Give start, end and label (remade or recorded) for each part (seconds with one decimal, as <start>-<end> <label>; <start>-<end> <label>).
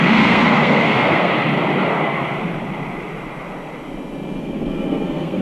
0.0-1.3 remade; 1.3-1.9 recorded; 1.9-2.4 remade; 2.4-4.4 recorded; 4.4-5.4 remade